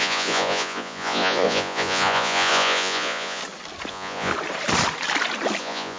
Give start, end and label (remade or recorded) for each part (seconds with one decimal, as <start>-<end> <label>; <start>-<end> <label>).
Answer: 0.0-3.4 remade; 3.4-3.9 recorded; 3.9-4.3 remade; 4.3-5.6 recorded; 5.6-6.0 remade